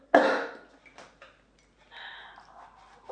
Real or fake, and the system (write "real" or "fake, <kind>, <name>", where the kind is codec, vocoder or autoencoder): real